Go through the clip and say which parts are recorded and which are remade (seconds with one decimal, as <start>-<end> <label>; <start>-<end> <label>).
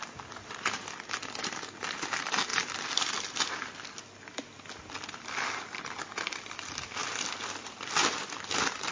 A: 0.0-8.9 recorded